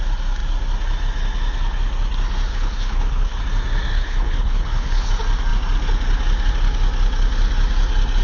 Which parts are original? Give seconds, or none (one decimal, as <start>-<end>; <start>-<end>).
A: 0.0-2.5; 3.4-3.9; 5.1-8.2

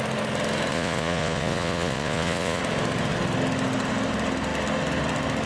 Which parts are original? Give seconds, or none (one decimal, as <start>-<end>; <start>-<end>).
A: 0.0-0.7; 2.6-5.5